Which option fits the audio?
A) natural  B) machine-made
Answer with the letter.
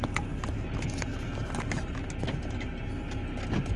A